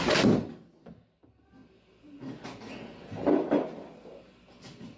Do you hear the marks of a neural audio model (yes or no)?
no